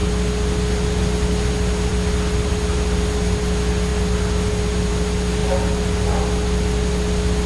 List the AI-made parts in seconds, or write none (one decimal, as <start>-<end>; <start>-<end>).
none

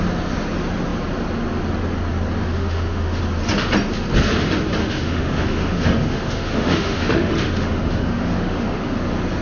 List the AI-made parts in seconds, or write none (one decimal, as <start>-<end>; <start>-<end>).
2.4-3.2; 4.8-9.0

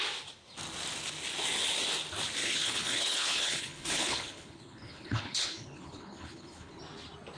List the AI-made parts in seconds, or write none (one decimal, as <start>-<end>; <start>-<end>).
2.4-6.8

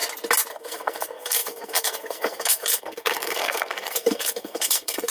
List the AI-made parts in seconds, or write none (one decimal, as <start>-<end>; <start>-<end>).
0.5-5.1

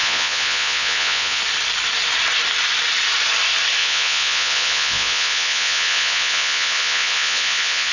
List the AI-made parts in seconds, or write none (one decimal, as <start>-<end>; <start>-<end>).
0.0-1.4; 3.8-7.9

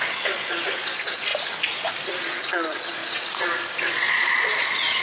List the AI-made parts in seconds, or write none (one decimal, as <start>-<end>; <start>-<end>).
0.0-1.3; 2.2-3.0; 3.8-5.0

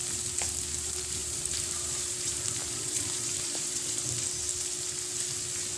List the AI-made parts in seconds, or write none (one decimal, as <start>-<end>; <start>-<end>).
1.2-4.0